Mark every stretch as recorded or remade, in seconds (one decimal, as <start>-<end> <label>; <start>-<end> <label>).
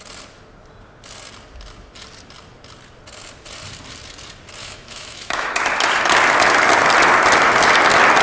0.0-4.6 recorded; 4.6-5.6 remade; 5.6-8.2 recorded